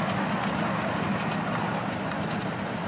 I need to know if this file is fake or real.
real